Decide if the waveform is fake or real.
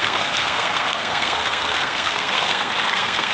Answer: fake